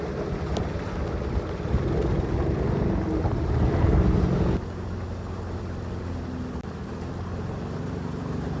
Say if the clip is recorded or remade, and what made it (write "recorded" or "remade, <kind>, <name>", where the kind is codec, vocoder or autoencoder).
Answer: recorded